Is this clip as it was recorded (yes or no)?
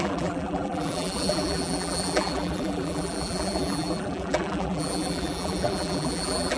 no